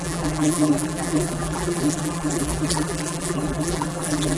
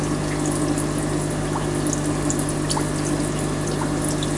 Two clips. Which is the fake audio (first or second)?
first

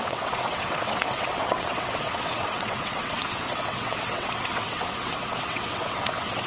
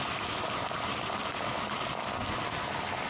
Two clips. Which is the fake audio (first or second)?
first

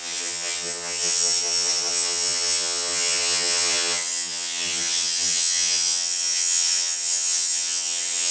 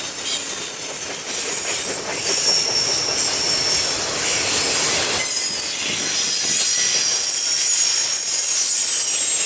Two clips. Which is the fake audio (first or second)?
first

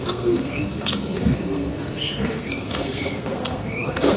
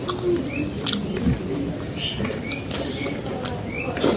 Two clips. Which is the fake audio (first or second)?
first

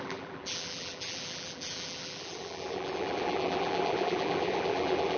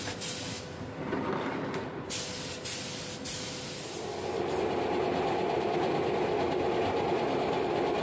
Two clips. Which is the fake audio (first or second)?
first